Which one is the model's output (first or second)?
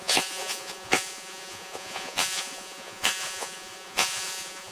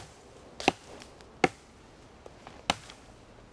first